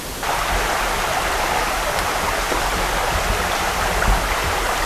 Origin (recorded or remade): recorded